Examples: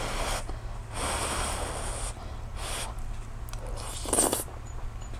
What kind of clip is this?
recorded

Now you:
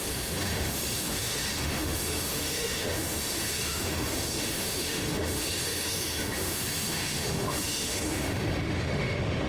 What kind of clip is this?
remade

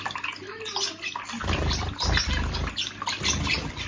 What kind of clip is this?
recorded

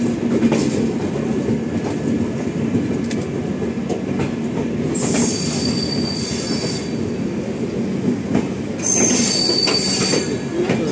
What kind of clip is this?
recorded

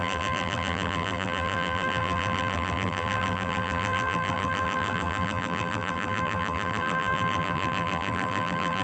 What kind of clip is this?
remade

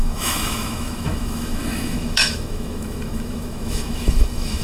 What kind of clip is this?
remade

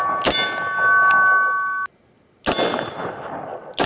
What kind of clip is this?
recorded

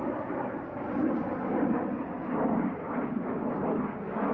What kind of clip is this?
recorded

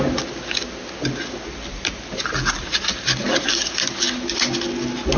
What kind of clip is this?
recorded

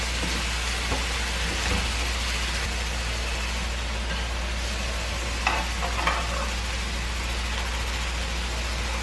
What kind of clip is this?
recorded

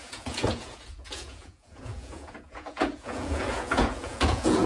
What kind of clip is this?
remade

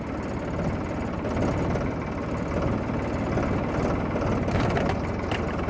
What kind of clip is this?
recorded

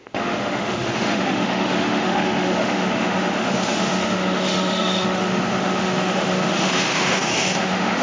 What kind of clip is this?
remade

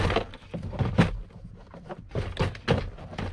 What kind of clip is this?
recorded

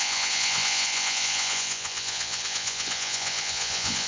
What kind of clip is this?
remade